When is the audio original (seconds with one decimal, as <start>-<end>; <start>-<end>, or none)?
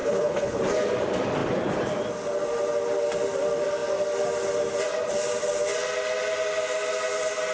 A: 0.6-7.5